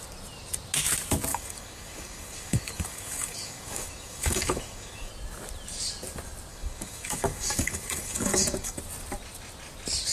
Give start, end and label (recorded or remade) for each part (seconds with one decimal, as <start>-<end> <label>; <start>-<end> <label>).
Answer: 0.0-1.3 recorded; 1.3-5.1 remade; 5.1-6.5 recorded; 6.5-8.8 remade; 8.8-10.1 recorded